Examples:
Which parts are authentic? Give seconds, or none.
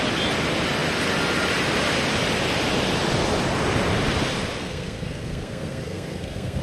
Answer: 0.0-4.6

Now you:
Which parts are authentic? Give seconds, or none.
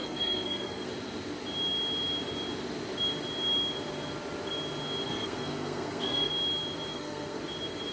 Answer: 0.9-5.1; 6.3-6.9; 7.4-7.9